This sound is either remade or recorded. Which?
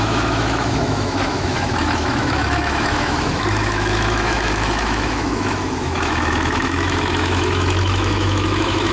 remade